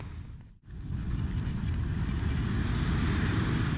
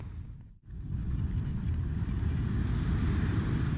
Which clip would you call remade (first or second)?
second